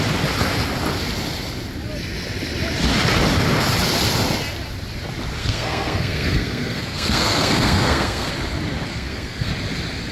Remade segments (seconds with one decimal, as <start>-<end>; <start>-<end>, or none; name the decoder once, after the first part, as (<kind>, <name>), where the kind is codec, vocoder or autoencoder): 5.4-8.3 (codec, SNAC); 8.9-9.5